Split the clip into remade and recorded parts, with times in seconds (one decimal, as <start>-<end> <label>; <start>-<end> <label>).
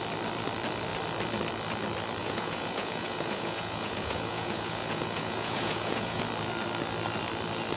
0.0-2.2 recorded; 2.2-6.2 remade; 6.2-7.8 recorded